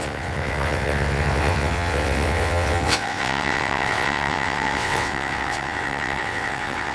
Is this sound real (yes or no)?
no